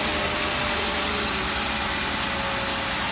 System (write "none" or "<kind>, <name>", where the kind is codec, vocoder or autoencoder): none